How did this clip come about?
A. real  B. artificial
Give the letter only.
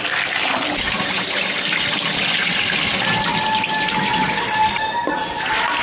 A